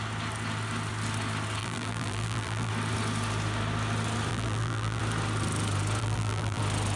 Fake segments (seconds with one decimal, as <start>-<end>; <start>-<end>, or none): 1.6-2.7; 4.3-5.0; 6.0-6.6